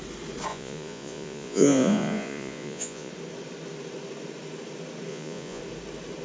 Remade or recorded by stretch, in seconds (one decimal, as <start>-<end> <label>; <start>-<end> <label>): 0.0-0.5 recorded; 0.5-3.1 remade; 3.1-5.1 recorded; 5.1-5.6 remade; 5.6-6.2 recorded